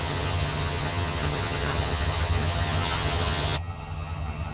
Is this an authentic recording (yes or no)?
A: no